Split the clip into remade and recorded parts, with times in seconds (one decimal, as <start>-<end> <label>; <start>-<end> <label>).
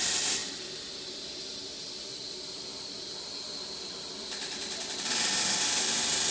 0.0-1.8 recorded; 1.8-5.6 remade; 5.6-6.3 recorded